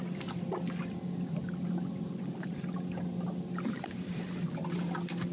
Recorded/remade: recorded